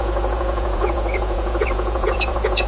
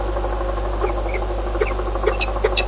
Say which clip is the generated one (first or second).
first